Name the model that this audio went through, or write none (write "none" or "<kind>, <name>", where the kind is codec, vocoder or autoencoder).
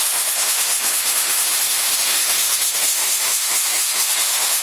autoencoder, DAC-VAE